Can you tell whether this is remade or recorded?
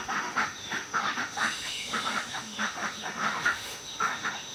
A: remade